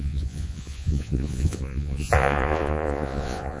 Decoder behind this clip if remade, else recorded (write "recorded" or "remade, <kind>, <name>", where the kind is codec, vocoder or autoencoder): remade, vocoder, Vocos